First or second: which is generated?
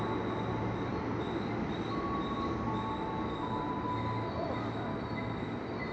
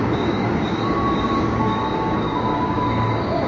second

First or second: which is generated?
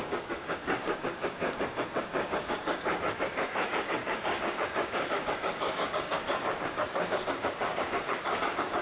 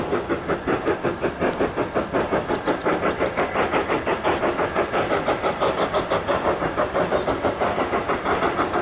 first